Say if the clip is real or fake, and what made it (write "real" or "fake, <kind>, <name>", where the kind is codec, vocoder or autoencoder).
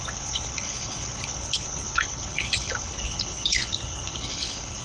fake, codec, HILCodec